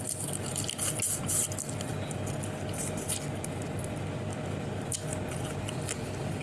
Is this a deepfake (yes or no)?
no